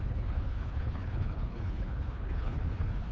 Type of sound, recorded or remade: remade